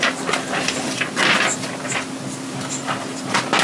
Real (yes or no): yes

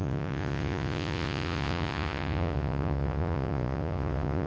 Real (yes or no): no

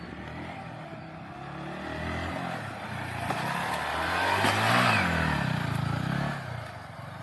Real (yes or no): yes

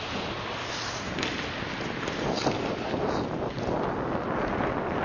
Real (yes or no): yes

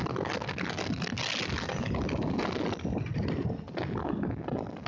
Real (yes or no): yes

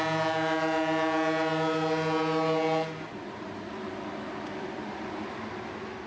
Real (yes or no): yes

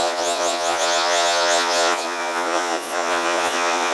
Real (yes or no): no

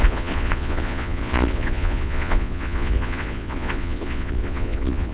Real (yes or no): no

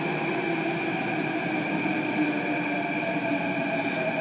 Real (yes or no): yes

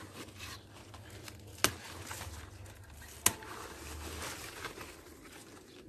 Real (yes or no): yes